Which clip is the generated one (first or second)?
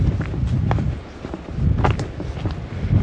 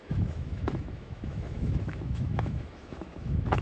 second